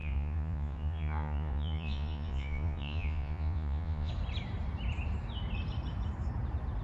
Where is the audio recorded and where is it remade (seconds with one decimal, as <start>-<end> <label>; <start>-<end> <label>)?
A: 0.0-4.1 remade; 4.1-6.8 recorded